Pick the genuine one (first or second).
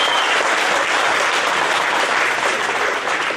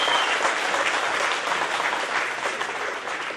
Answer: second